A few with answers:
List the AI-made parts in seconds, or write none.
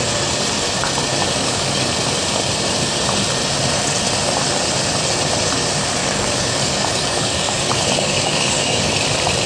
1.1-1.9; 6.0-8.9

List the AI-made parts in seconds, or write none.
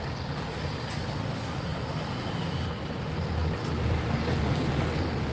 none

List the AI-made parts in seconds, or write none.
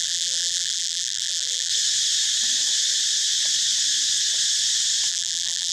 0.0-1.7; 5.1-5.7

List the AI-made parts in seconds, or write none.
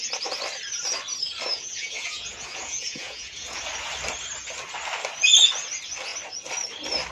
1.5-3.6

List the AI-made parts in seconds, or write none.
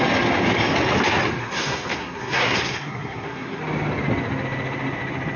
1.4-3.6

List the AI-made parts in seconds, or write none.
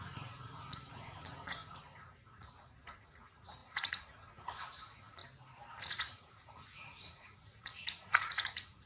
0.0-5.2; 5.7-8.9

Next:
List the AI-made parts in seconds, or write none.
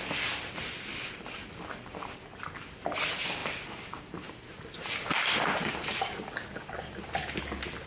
none